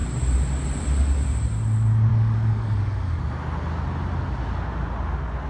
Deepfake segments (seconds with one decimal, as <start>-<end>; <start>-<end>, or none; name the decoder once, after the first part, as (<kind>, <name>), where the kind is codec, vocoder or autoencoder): 2.1-3.2 (codec, DAC)